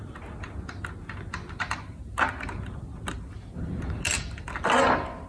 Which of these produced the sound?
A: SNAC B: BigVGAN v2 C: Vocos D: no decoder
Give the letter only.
D